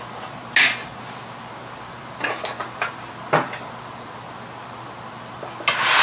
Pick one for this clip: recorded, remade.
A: recorded